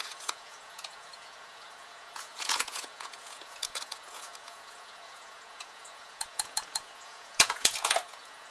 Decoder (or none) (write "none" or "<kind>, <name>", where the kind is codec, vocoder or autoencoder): vocoder, Vocos